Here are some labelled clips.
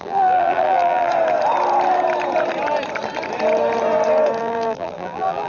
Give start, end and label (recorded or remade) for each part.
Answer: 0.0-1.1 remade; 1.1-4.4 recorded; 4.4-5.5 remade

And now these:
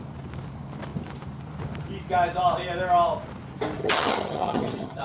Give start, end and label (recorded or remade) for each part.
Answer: 0.0-3.8 recorded; 3.8-5.0 remade

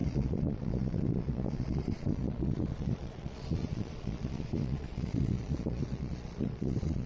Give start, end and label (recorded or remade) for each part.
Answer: 0.0-7.1 remade